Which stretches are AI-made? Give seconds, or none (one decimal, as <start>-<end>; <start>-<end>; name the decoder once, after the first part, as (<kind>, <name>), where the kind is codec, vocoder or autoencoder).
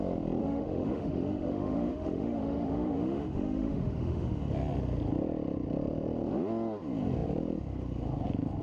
0.4-4.4 (autoencoder, DAC-VAE)